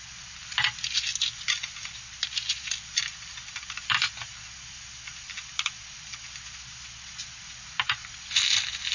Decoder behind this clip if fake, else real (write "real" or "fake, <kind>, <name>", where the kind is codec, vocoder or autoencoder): real